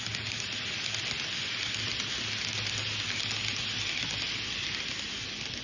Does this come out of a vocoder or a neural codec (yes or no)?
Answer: no